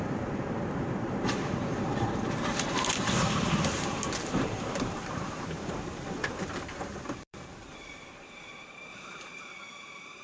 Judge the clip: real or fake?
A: fake